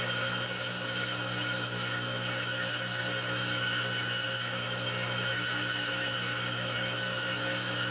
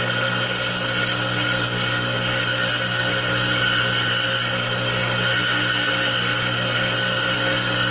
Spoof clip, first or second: first